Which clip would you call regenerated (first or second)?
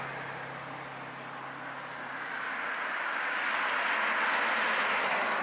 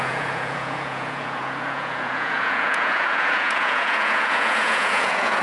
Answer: second